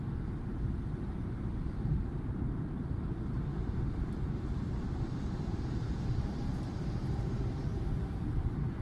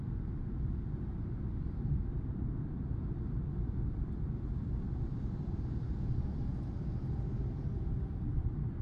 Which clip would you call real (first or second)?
second